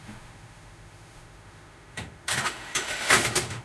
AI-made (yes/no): yes